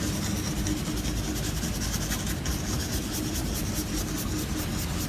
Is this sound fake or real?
real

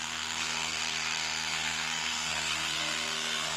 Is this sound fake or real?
fake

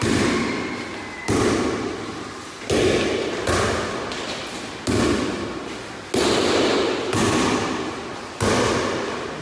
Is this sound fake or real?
real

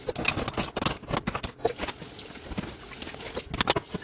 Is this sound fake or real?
real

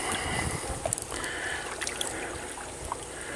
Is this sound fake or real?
real